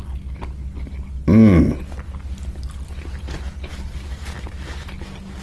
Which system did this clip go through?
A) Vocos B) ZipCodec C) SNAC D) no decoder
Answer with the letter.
D